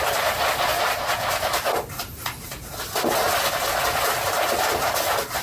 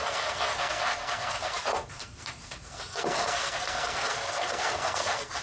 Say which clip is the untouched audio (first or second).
first